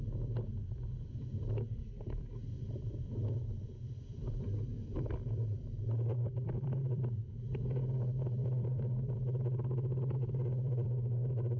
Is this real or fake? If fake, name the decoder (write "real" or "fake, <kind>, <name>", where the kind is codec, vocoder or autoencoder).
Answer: fake, vocoder, BigVGAN v2